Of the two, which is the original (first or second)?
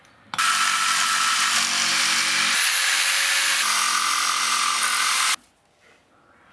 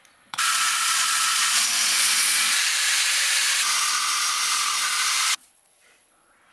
first